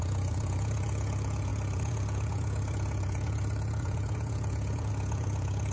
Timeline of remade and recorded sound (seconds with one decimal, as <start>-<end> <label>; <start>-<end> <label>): 0.0-5.7 remade